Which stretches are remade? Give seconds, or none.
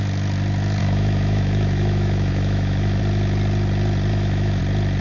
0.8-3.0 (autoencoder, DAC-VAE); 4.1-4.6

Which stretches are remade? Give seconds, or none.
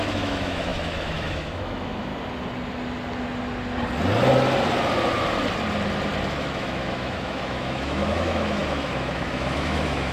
0.0-2.1 (autoencoder, DAC-VAE); 6.3-10.1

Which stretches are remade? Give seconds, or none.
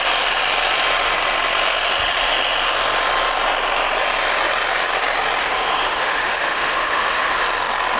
5.4-7.4 (autoencoder, DAC-VAE)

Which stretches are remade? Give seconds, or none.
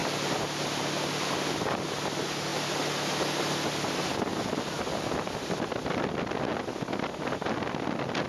none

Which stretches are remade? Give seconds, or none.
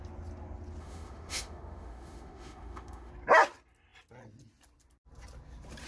0.8-3.1 (autoencoder, DAC-VAE)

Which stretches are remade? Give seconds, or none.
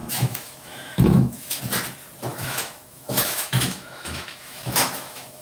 0.0-1.6 (autoencoder, DAC-VAE); 2.3-5.4